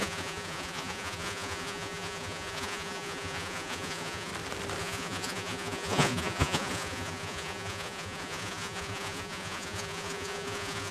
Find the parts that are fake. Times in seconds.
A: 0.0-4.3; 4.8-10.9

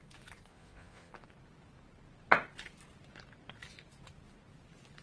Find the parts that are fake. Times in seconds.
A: 0.5-1.1